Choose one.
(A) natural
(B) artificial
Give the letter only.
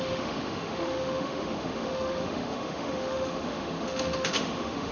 B